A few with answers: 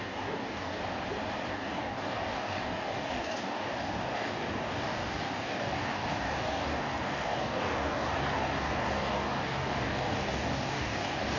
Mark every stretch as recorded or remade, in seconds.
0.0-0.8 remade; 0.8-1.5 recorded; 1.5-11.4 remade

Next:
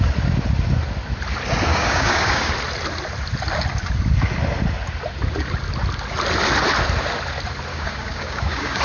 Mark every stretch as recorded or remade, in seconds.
0.0-1.7 recorded; 1.7-2.5 remade; 2.5-7.7 recorded; 7.7-8.8 remade